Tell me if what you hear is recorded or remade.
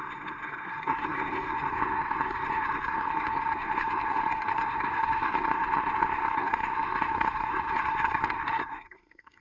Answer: remade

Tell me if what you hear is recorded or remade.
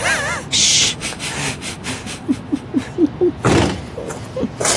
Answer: recorded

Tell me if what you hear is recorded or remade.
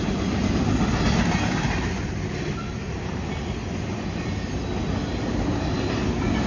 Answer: recorded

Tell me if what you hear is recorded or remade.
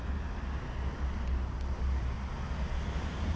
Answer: recorded